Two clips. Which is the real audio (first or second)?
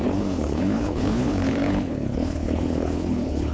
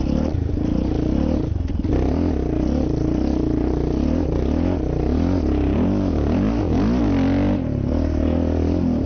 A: second